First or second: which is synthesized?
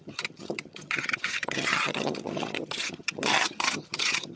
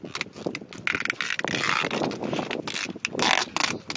first